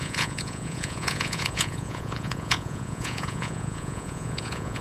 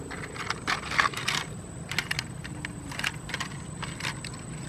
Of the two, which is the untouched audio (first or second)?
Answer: second